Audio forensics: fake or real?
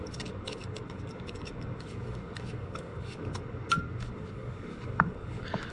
fake